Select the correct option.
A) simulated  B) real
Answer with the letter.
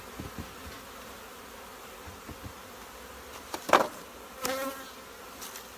B